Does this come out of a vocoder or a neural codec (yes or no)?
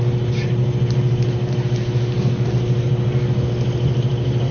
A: no